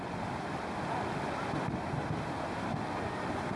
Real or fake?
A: real